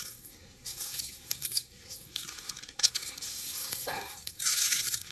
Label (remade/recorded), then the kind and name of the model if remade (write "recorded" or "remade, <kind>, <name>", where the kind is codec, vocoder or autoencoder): remade, codec, SNAC